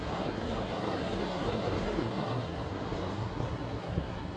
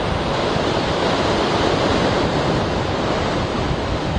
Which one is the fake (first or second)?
first